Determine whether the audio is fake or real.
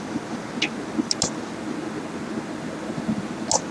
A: real